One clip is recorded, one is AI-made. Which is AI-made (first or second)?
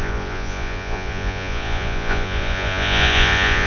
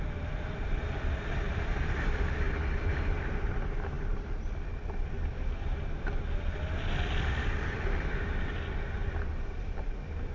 first